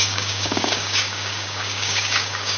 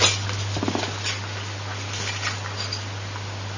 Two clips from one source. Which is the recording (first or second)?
second